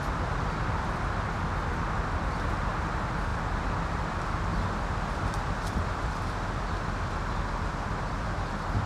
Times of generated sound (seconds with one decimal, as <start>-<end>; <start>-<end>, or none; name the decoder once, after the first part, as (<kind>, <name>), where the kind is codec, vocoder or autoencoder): none